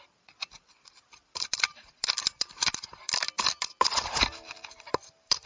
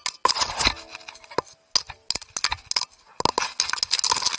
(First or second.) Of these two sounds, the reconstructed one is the first